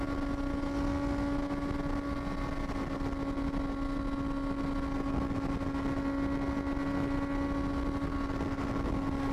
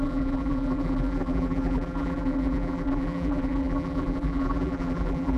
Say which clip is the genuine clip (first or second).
first